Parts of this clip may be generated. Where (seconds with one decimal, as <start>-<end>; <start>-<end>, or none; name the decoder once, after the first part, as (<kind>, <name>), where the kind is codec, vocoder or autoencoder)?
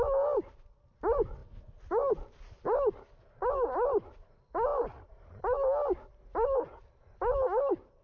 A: none